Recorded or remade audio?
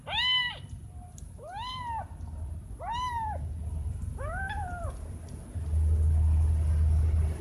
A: recorded